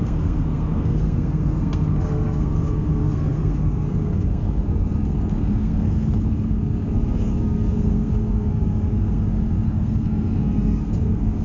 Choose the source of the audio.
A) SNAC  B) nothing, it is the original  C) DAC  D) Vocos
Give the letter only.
A